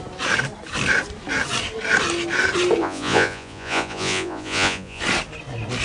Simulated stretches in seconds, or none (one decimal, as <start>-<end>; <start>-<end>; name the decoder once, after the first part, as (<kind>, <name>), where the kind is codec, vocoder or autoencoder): 2.8-5.0 (vocoder, Vocos)